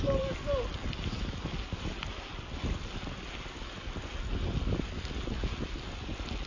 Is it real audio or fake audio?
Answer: real